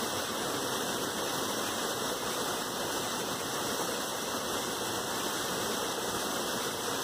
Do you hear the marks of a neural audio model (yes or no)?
no